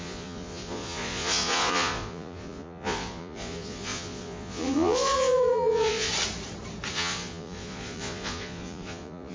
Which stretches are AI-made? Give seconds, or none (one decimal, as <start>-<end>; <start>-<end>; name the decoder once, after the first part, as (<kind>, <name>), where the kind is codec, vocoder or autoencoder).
0.0-6.1 (vocoder, Vocos); 6.9-9.3